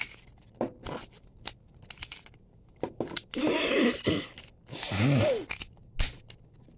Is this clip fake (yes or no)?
no